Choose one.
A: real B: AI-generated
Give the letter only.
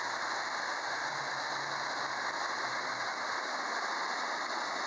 A